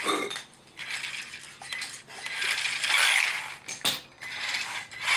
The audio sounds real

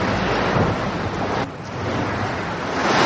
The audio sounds real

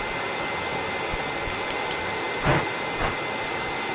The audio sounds real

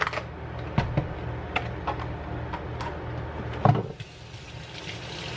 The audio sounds real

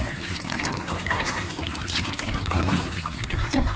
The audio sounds fake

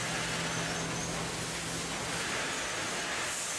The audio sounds real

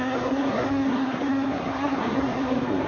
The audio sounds fake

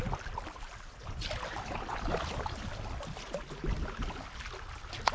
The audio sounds real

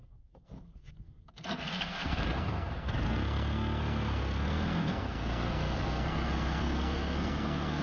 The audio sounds fake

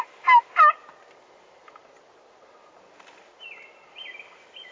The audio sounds real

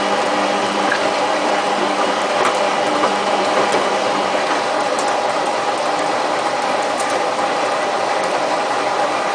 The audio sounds real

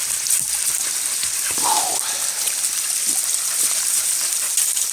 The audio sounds real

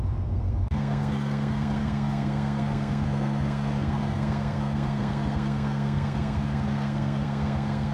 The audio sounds fake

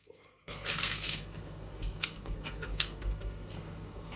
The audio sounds fake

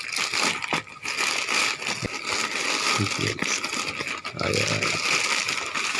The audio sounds real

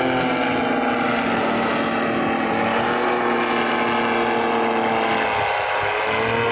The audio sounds real